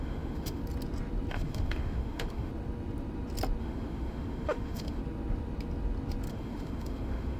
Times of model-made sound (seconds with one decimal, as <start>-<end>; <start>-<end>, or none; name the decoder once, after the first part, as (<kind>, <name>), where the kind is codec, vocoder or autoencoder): 0.0-0.6 (autoencoder, DAC-VAE); 1.3-2.5; 3.6-5.0; 6.3-7.4